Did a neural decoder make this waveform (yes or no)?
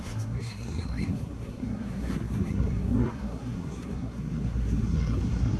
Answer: yes